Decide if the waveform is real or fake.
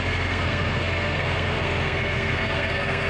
fake